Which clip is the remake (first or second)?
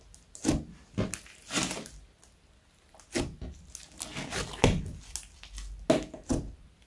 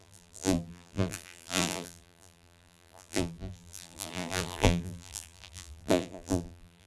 second